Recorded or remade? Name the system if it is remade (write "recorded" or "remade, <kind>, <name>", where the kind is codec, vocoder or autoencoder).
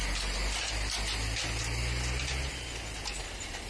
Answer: recorded